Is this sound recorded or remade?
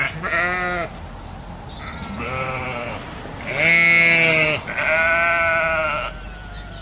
recorded